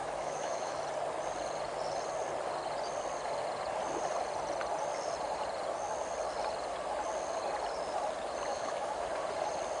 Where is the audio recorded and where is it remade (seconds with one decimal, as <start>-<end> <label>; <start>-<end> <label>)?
0.0-0.8 remade; 0.8-8.5 recorded; 8.5-9.0 remade; 9.0-9.8 recorded